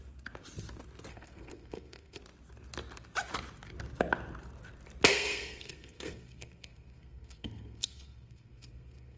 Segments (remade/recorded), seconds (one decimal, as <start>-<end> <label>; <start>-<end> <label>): 0.0-1.1 recorded; 1.1-2.2 remade; 2.2-5.1 recorded; 5.1-9.2 remade